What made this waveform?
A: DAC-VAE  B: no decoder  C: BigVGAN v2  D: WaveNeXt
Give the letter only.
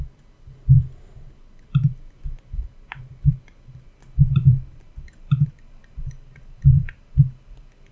B